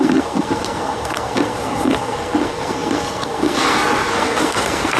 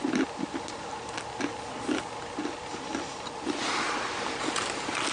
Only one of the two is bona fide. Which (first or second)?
second